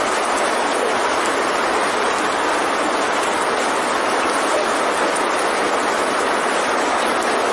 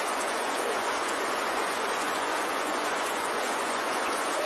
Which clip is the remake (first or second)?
second